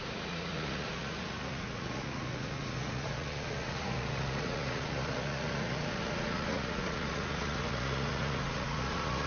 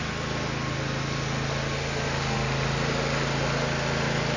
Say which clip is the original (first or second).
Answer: second